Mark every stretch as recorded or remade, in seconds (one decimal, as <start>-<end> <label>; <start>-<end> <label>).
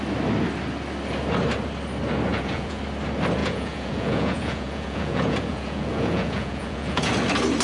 0.0-2.3 recorded; 2.3-2.8 remade; 2.8-3.4 recorded; 3.4-7.1 remade; 7.1-7.6 recorded